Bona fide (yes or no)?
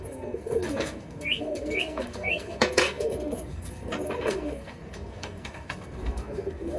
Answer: no